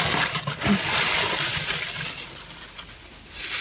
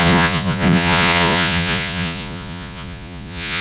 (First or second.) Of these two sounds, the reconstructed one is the second